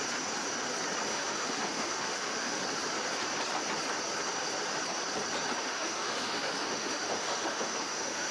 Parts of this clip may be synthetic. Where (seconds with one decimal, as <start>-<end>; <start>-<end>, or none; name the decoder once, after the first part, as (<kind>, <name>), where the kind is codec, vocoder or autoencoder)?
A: 1.1-2.6 (autoencoder, DAC-VAE); 5.6-8.3